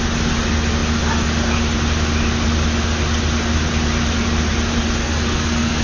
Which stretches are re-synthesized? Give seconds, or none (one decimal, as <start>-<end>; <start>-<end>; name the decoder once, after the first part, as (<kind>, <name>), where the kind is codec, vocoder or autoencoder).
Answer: 5.0-5.8 (codec, SNAC)